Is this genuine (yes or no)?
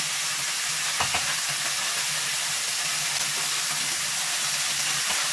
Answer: yes